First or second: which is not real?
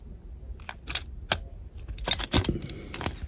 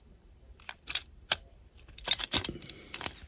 second